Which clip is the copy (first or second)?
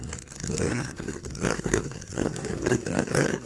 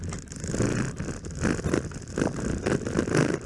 first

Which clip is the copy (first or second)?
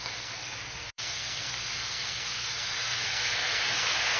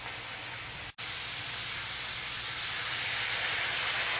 first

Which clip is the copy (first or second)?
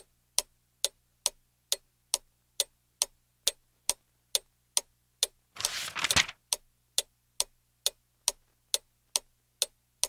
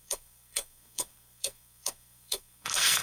second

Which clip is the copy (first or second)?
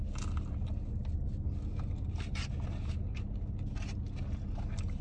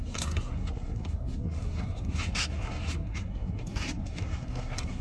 second